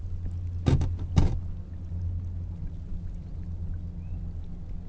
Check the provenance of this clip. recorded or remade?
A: recorded